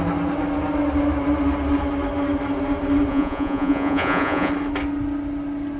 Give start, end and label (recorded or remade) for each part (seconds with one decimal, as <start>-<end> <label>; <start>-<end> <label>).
0.0-3.1 recorded; 3.1-4.5 remade; 4.5-5.8 recorded